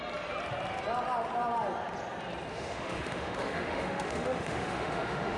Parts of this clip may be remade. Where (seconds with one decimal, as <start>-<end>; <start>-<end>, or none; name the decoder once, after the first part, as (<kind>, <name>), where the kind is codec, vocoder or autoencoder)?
2.5-5.4 (autoencoder, DAC-VAE)